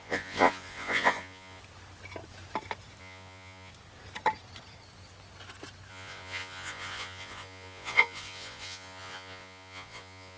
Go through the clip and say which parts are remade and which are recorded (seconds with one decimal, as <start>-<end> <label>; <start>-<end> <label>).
0.0-1.6 remade; 1.6-3.0 recorded; 3.0-3.7 remade; 3.7-5.9 recorded; 5.9-10.4 remade